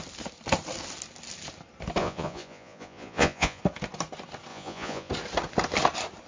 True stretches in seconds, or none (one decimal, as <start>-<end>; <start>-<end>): 0.0-2.0; 3.6-4.5; 5.1-6.3